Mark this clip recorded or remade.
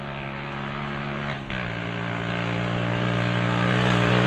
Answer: recorded